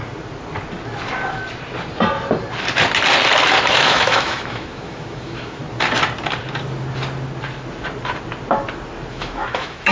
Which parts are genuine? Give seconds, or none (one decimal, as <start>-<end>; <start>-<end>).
0.0-3.7; 5.6-9.1